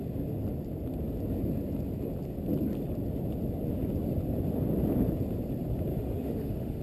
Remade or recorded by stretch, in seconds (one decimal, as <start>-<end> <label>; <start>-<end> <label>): 0.0-5.9 recorded; 5.9-6.8 remade